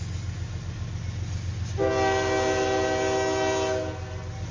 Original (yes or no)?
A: yes